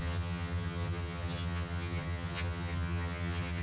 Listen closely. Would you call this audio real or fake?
fake